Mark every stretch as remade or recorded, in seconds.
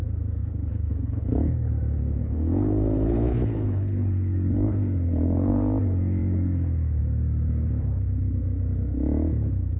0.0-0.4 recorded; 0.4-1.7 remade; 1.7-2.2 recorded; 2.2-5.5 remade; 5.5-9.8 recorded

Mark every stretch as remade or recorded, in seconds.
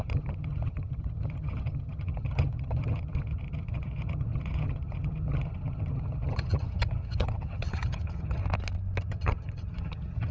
0.0-8.4 remade; 8.4-9.0 recorded; 9.0-10.3 remade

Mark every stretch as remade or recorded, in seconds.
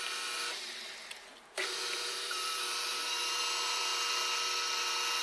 0.0-1.3 recorded; 1.3-3.4 remade; 3.4-5.2 recorded